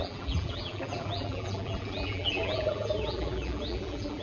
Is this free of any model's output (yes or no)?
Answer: no